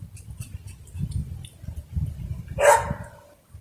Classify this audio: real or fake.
real